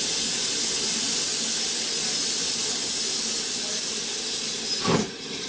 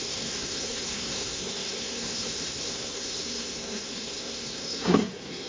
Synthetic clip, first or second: second